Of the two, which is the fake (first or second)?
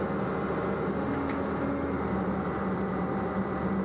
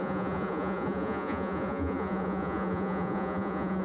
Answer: second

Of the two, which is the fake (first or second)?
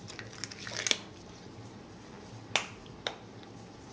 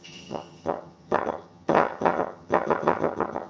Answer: second